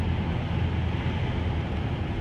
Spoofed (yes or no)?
no